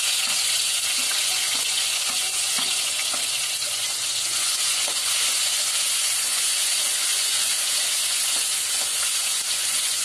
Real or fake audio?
fake